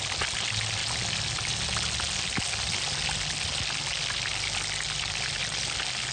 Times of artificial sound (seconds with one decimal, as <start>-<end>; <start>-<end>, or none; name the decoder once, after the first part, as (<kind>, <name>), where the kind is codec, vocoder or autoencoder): none